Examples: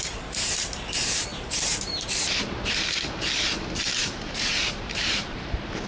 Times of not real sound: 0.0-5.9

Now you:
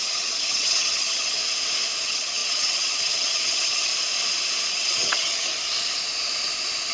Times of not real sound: 0.0-1.4; 2.0-3.9; 4.7-5.5